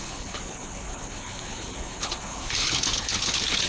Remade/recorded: remade